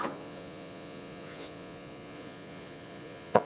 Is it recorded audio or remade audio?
remade